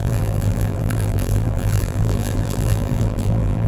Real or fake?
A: fake